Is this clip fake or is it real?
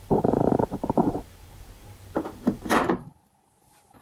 fake